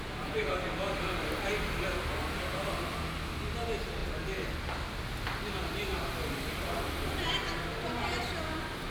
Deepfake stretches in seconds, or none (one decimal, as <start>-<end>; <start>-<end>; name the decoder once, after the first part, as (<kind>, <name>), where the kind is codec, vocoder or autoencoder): none